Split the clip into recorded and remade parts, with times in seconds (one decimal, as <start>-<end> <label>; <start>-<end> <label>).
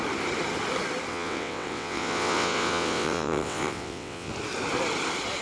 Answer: 0.0-1.1 recorded; 1.1-4.3 remade; 4.3-5.4 recorded